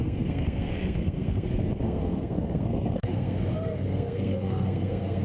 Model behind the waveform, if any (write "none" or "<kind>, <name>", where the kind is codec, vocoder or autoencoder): codec, SNAC